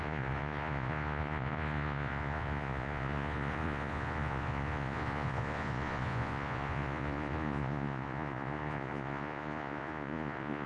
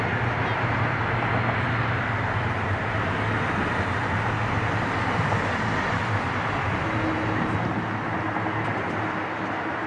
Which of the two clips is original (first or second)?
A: second